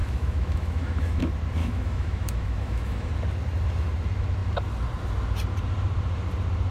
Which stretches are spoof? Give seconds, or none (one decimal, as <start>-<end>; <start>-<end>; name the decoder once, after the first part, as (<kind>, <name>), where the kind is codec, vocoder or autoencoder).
0.0-1.2 (autoencoder, DAC-VAE); 1.6-3.1